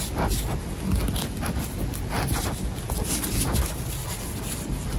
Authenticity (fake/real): real